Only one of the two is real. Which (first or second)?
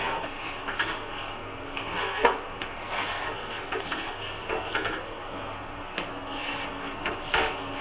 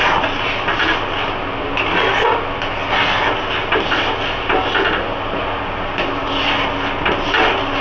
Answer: second